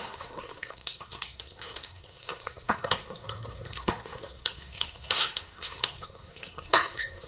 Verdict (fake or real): fake